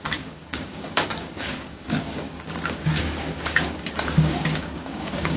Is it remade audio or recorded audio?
remade